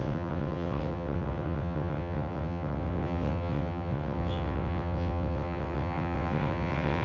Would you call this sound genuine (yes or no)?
no